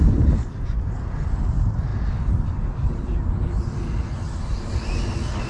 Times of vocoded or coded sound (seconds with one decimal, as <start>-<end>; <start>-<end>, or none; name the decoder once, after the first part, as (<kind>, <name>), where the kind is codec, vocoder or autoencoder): none